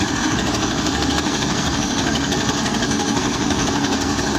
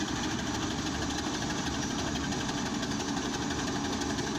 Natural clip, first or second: second